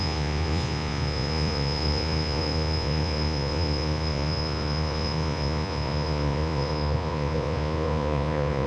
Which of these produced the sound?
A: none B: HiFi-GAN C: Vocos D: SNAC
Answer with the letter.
C